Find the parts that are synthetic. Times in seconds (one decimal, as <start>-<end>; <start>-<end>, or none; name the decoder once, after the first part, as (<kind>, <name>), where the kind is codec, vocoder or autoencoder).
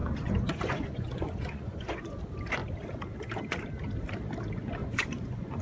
0.0-2.2 (vocoder, Vocos); 4.8-5.6